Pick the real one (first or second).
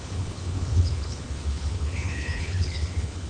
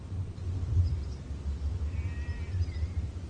second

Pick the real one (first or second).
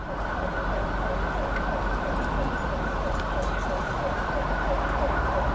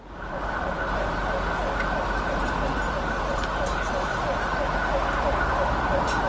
second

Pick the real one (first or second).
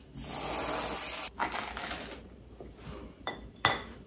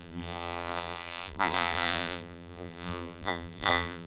first